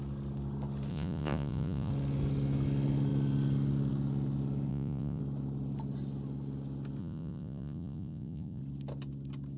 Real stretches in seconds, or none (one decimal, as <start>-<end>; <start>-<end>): 0.0-0.9; 1.9-4.7; 5.2-7.0; 8.6-9.6